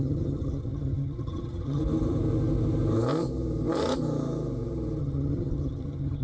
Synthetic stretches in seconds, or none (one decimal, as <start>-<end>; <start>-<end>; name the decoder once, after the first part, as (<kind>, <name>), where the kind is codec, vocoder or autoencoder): 0.0-1.8 (vocoder, HiFi-GAN); 5.0-6.2